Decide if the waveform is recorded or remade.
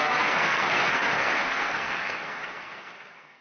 remade